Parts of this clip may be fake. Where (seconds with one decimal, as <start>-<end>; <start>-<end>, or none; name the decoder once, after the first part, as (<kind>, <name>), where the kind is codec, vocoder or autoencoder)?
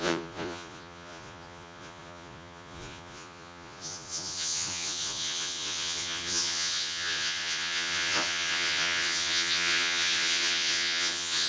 0.0-11.5 (vocoder, Vocos)